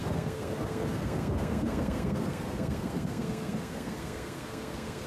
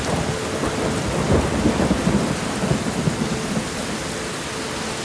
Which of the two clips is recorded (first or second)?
second